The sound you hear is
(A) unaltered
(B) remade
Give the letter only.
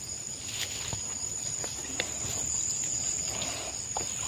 A